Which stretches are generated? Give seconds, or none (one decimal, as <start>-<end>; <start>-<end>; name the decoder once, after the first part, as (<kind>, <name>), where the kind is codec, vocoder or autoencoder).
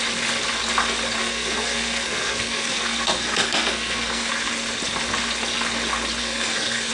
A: 1.2-4.5 (codec, SNAC); 6.2-6.9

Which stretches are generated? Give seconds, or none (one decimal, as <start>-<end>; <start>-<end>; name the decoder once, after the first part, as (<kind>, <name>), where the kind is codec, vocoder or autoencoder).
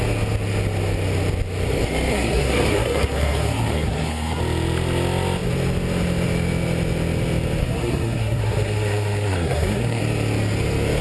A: 2.1-4.4 (codec, SNAC); 7.6-10.0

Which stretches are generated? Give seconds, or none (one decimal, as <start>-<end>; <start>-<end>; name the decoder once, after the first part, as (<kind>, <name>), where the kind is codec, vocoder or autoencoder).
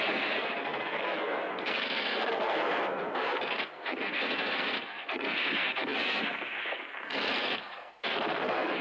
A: 0.0-8.8 (codec, SNAC)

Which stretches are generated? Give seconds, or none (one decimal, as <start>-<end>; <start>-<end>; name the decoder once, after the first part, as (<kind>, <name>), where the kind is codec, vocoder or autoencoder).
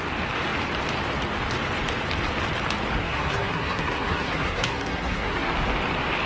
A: 3.0-5.5 (codec, SNAC)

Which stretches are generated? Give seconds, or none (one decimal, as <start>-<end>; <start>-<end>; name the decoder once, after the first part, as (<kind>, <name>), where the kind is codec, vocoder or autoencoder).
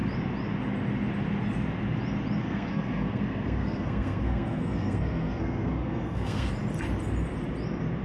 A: 2.4-6.5 (codec, SNAC)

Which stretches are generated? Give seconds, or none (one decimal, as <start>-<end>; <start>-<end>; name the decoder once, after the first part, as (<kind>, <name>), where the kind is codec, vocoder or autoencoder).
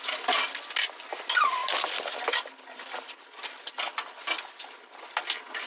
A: none